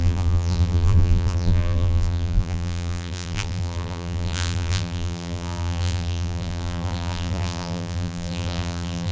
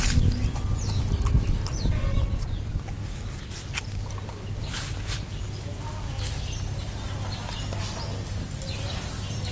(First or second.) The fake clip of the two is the first